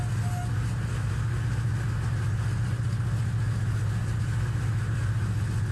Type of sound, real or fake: real